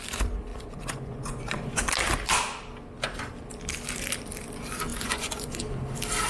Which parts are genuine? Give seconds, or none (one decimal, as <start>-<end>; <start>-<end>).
0.0-0.5; 1.8-4.9; 5.6-6.3